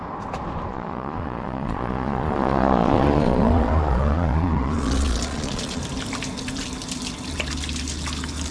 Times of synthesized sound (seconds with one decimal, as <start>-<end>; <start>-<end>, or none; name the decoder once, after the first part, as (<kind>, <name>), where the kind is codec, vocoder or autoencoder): 0.7-5.8 (vocoder, Vocos)